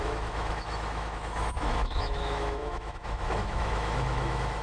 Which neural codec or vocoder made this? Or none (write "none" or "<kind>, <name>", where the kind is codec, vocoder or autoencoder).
autoencoder, DAC-VAE